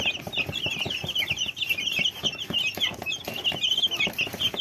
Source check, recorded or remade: recorded